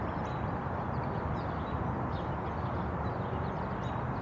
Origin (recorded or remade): recorded